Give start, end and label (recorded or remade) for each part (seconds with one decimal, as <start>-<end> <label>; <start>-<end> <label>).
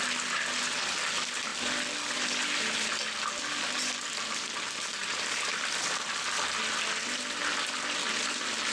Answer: 0.0-8.7 recorded